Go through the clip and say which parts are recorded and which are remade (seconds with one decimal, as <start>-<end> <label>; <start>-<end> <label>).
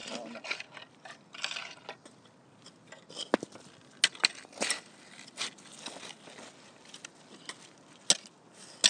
0.0-8.9 recorded